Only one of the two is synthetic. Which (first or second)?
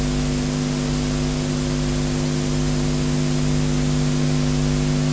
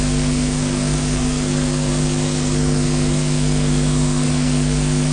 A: second